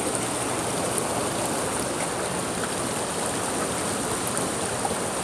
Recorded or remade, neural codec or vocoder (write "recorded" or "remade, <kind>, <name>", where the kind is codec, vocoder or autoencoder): recorded